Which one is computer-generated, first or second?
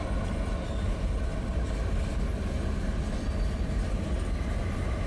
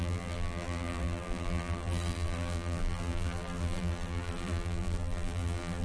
second